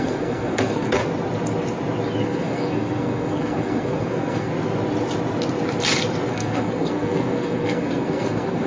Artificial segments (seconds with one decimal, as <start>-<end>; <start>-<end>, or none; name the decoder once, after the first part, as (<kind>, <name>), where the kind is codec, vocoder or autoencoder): 0.0-1.0 (codec, SNAC); 2.2-4.5; 6.3-8.7